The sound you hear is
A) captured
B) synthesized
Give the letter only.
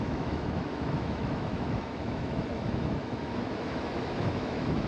B